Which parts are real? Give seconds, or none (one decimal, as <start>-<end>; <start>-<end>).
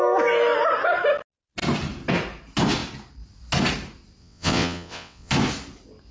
0.0-4.2; 5.3-6.1